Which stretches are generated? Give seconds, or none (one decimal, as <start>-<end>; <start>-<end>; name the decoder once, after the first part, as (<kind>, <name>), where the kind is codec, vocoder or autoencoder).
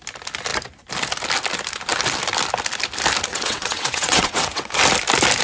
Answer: 3.3-4.7 (vocoder, WaveNeXt)